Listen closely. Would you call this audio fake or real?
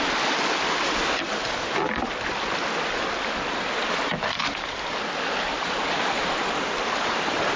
real